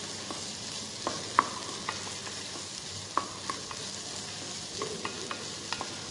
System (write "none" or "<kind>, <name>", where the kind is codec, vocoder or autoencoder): none